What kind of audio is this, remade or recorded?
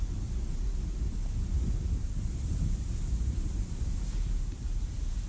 remade